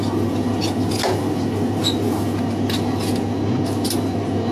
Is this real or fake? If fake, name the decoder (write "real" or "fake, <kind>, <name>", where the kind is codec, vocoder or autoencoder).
real